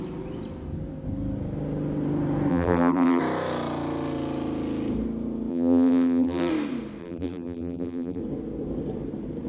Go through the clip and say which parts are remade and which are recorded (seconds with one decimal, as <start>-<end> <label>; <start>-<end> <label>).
0.0-2.5 recorded; 2.5-3.2 remade; 3.2-5.5 recorded; 5.5-6.5 remade; 6.5-7.0 recorded; 7.0-8.2 remade; 8.2-9.5 recorded